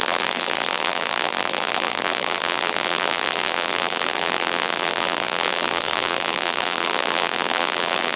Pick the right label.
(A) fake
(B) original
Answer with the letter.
A